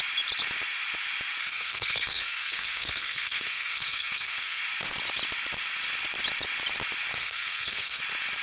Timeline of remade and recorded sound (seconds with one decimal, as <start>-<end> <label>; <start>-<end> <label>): 0.0-1.4 recorded; 1.4-4.6 remade; 4.6-7.2 recorded; 7.2-8.0 remade; 8.0-8.4 recorded